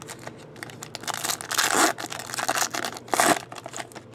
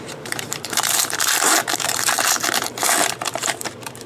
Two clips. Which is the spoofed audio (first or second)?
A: second